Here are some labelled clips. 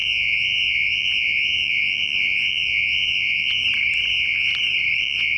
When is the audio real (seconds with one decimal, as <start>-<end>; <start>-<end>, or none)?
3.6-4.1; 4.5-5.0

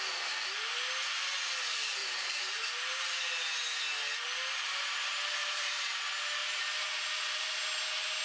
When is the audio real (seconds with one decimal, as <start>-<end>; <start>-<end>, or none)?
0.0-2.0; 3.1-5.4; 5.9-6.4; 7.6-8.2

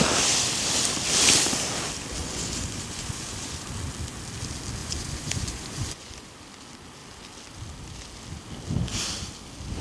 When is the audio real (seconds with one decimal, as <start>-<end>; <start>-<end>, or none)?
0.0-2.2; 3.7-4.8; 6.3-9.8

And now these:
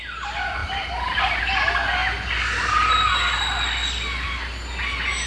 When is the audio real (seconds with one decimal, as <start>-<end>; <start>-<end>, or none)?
0.0-5.3

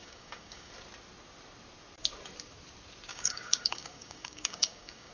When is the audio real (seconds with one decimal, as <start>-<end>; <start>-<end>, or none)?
0.7-3.1

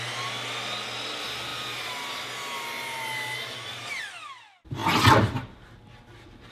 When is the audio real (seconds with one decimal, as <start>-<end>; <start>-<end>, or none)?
0.0-6.5

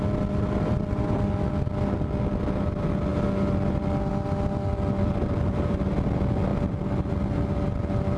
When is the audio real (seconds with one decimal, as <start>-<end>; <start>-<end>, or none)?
0.0-8.2